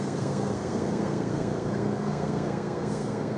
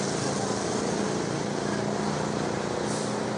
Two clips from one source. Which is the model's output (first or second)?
first